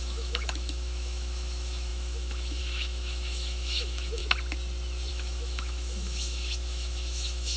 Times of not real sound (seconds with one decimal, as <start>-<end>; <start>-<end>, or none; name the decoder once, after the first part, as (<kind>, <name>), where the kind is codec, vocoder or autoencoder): 0.0-4.2 (autoencoder, DAC-VAE); 5.1-7.6